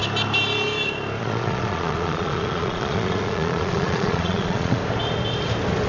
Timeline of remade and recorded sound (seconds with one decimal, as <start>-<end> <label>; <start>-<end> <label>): 0.0-1.2 recorded; 1.2-4.8 remade; 4.8-5.9 recorded